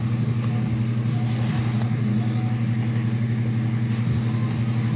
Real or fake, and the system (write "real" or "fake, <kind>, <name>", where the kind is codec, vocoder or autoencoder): real